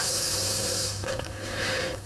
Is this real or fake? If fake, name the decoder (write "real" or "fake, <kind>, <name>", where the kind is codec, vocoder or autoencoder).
fake, codec, SNAC